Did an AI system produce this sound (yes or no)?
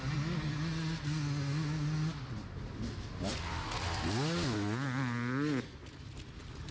no